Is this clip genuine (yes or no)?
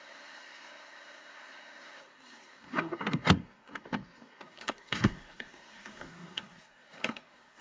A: no